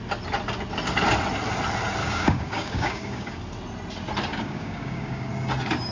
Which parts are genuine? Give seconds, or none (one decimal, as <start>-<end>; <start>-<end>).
0.0-2.0; 3.4-4.3; 5.3-5.9